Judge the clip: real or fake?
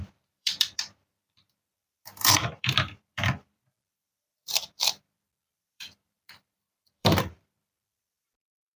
fake